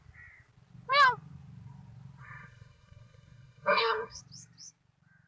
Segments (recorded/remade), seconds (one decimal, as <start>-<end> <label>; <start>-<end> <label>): 0.0-2.2 recorded; 2.2-4.2 remade; 4.2-5.3 recorded